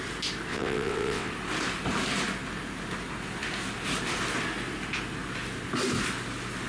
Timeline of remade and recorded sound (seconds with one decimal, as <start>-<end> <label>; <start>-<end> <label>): 0.0-0.5 recorded; 0.5-1.3 remade; 1.3-6.7 recorded